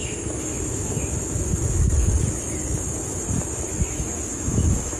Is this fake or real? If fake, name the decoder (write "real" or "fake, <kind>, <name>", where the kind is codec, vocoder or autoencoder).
fake, autoencoder, DAC-VAE